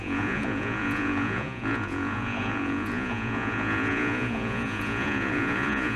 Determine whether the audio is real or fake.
fake